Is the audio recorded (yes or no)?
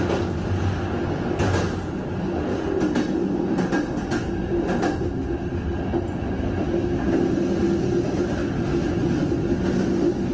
yes